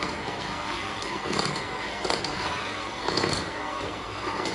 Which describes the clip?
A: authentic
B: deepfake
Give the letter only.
B